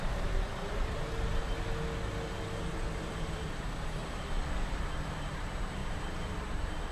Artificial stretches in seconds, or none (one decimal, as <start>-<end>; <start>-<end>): 0.0-1.3; 3.1-4.0; 4.8-6.9